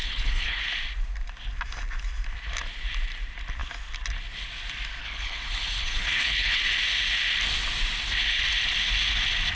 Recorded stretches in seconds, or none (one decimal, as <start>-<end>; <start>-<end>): 0.6-5.0; 6.6-9.6